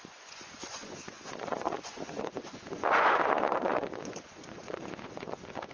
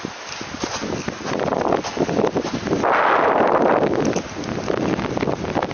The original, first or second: second